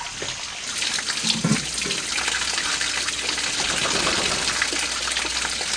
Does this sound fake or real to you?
real